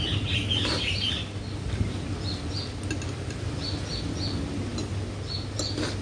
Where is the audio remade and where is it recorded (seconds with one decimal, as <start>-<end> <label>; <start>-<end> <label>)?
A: 0.0-6.0 recorded